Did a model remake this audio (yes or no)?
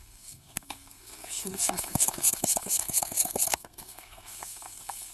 yes